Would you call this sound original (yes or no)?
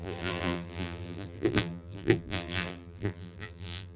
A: no